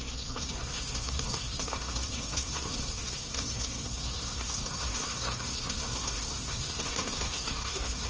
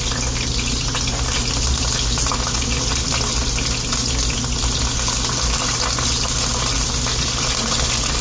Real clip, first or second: second